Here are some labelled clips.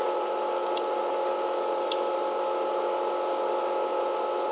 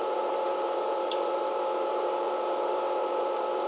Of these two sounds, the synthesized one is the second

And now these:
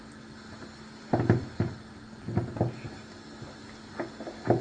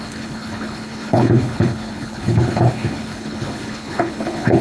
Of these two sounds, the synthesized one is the second